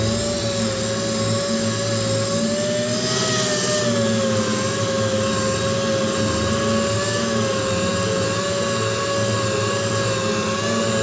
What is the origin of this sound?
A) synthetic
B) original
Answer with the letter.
B